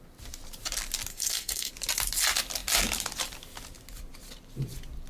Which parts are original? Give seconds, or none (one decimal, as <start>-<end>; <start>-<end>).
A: 0.0-1.1; 1.7-5.1